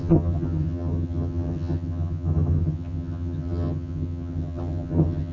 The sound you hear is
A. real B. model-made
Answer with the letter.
B